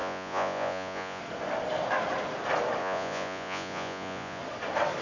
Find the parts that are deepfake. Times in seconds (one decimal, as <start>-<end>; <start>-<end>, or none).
0.0-1.2; 2.8-4.4